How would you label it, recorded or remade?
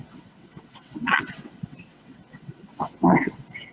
remade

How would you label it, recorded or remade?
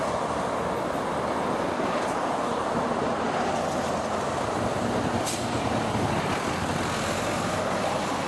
recorded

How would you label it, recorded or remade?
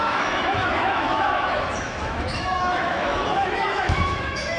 remade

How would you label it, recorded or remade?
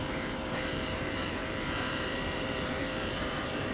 remade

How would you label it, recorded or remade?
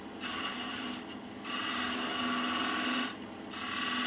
recorded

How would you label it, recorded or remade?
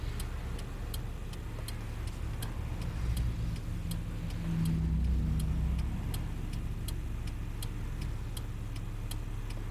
recorded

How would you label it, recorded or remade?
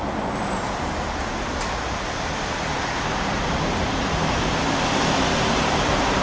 recorded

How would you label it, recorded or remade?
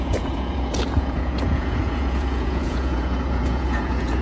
remade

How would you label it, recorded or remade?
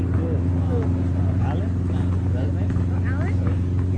recorded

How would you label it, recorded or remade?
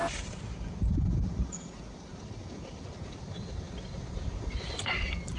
recorded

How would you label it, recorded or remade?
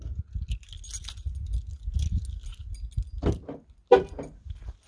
recorded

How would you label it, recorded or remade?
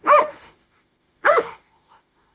remade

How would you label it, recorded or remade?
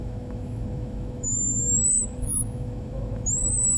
remade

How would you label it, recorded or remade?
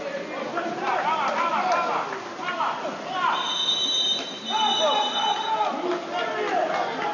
recorded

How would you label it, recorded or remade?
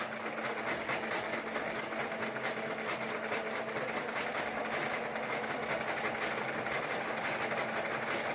recorded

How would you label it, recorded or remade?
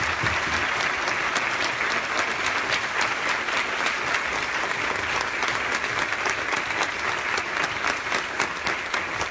recorded